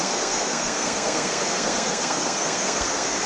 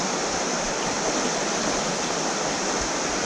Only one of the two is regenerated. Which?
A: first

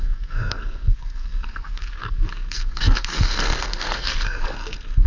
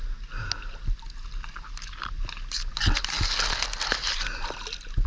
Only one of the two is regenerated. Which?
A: first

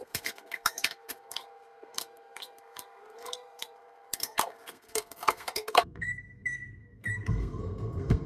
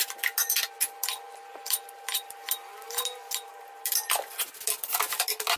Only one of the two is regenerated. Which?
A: first